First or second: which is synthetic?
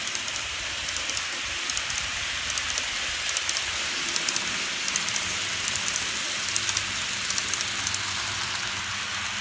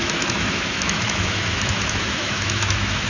second